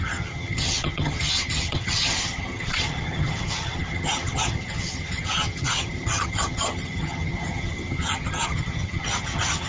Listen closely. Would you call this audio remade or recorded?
remade